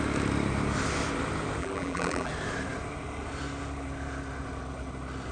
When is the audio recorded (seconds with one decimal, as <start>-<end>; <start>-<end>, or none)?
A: 0.0-1.6; 2.3-5.3